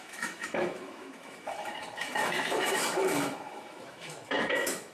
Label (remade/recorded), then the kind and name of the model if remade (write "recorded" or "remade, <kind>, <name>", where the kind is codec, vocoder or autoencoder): remade, autoencoder, DAC-VAE